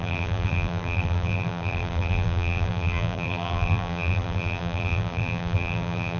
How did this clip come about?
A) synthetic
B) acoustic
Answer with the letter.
A